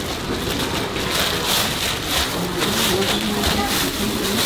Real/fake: real